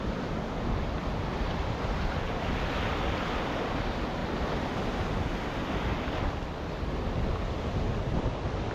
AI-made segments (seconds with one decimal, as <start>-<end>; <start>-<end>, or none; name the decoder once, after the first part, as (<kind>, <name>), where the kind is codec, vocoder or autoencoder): none